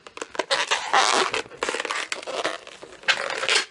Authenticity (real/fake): real